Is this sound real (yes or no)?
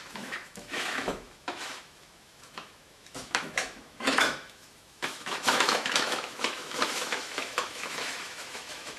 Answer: no